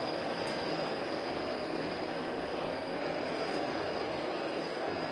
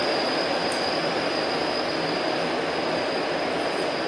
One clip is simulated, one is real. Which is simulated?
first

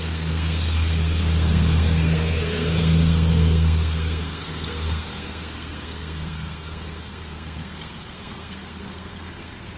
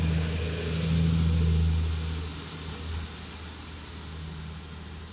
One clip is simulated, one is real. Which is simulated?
first